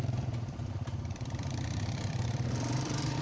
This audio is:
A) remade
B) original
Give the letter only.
A